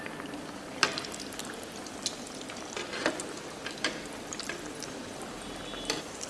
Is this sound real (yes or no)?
yes